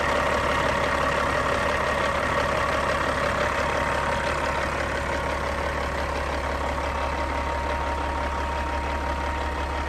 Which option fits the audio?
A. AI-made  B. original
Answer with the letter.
B